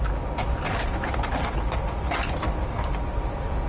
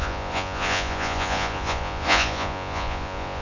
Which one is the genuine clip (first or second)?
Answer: first